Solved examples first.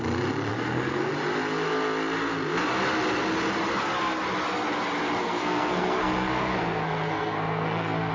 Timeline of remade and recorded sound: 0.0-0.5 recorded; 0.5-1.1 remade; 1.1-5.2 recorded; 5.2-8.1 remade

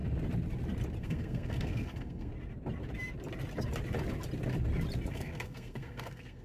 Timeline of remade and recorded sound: 0.0-1.0 recorded; 1.0-2.3 remade; 2.3-5.1 recorded; 5.1-6.4 remade

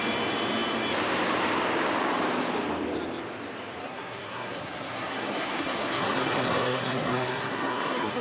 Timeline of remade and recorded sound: 0.0-3.8 recorded; 3.8-8.2 remade

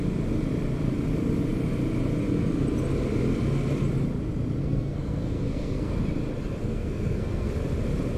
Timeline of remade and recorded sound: 0.0-4.6 recorded; 4.6-6.0 remade; 6.0-6.6 recorded; 6.6-7.5 remade; 7.5-8.2 recorded